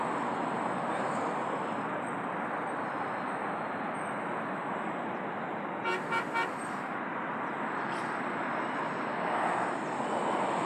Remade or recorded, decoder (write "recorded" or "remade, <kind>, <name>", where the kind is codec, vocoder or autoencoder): recorded